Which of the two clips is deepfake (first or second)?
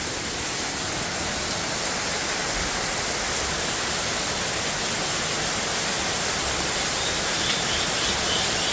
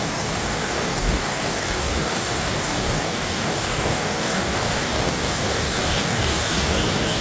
second